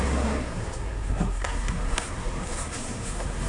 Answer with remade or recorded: remade